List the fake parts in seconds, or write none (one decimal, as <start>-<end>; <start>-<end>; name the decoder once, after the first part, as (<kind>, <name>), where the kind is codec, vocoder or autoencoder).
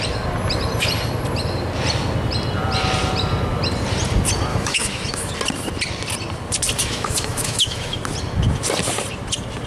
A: 4.5-5.3 (autoencoder, DAC-VAE); 6.8-8.0